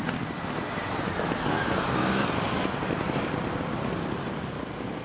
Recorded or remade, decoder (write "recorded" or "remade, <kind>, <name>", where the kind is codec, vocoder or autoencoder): recorded